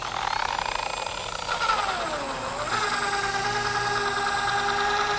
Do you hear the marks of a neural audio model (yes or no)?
no